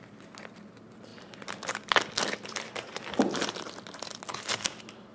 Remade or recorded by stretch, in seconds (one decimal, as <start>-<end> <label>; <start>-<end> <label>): 0.0-5.1 recorded